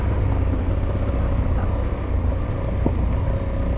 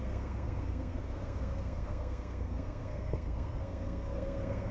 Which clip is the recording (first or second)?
first